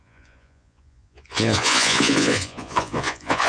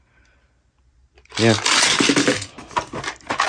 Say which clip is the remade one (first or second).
first